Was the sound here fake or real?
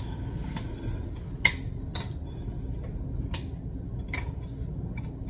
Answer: real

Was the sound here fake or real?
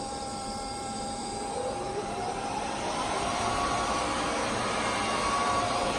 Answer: fake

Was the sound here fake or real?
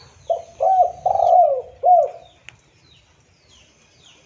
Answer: real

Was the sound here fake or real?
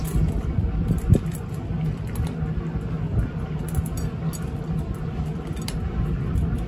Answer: real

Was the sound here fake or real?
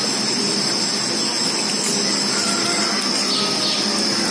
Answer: real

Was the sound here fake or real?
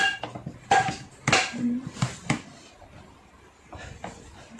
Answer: real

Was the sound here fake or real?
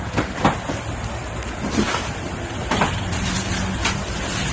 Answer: fake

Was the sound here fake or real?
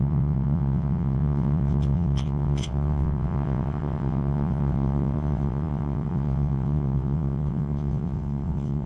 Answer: fake